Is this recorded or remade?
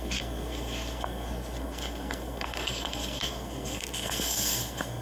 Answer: remade